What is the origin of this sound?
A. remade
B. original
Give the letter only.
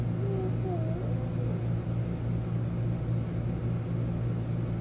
B